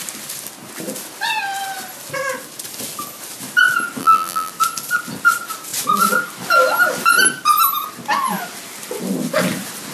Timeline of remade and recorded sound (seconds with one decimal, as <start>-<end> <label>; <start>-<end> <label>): 0.0-4.0 recorded; 4.0-4.5 remade; 4.5-9.9 recorded